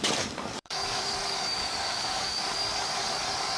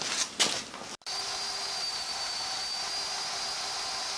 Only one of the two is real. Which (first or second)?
second